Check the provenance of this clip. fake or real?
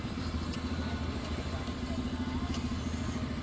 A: real